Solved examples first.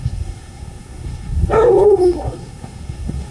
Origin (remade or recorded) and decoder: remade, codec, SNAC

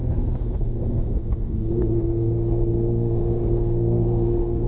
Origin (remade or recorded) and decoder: remade, codec, SNAC